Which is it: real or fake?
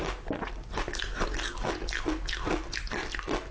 real